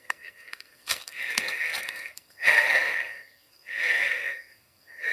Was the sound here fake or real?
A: fake